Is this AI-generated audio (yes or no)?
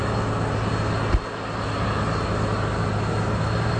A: no